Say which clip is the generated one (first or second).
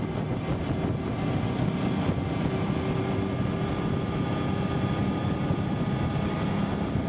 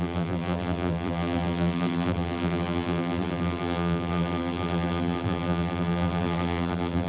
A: second